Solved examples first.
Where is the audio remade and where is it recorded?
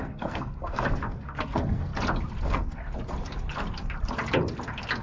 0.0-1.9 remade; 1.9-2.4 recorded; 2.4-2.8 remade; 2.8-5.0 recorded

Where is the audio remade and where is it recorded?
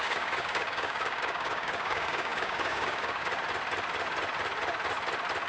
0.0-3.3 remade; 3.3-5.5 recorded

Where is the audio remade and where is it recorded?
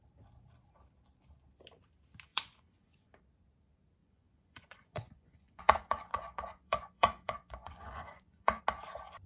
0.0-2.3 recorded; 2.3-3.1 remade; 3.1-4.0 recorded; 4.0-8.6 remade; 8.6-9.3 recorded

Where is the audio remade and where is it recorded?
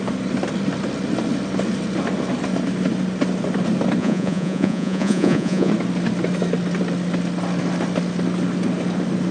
0.0-4.0 recorded; 4.0-5.7 remade; 5.7-9.3 recorded